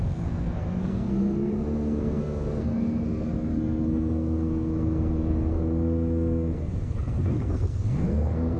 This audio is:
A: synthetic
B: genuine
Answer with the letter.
A